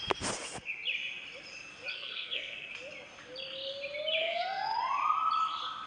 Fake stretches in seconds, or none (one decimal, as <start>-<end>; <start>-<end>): 1.9-2.7; 4.2-4.8

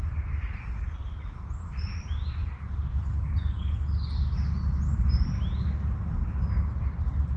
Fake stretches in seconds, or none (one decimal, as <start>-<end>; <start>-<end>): 1.0-2.0